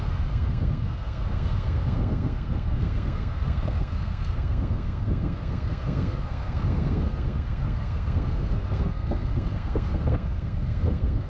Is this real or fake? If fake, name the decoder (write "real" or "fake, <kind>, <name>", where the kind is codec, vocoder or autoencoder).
fake, codec, SNAC